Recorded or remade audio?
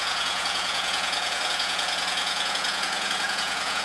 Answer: remade